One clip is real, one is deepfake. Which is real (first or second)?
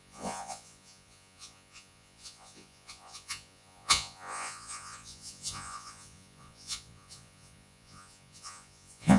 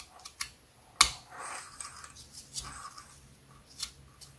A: second